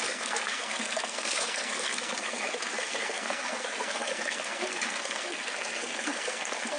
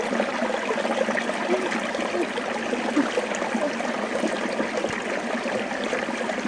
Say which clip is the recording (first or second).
second